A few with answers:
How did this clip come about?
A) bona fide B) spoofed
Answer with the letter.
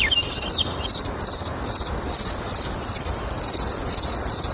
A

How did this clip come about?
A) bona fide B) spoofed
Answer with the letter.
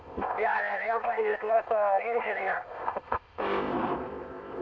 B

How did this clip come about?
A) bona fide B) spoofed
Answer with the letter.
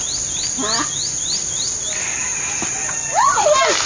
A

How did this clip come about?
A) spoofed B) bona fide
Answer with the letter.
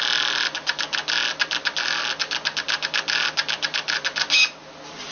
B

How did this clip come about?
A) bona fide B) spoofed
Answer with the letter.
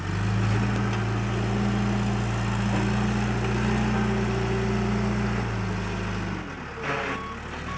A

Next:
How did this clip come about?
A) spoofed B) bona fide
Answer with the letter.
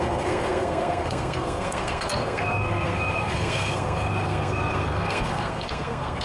A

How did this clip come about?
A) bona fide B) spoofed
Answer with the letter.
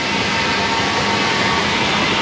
A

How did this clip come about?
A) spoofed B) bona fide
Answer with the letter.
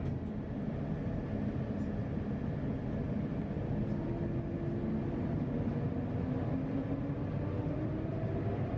B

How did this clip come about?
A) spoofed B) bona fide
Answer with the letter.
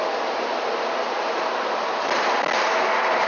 B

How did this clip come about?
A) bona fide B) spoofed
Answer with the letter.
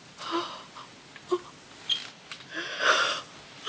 A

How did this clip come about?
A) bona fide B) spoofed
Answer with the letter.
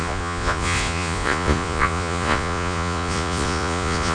B